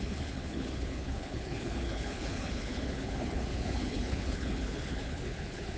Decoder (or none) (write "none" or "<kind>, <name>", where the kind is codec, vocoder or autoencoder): codec, HILCodec